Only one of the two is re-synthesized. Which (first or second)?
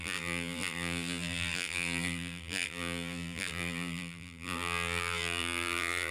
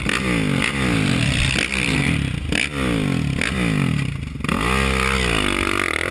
first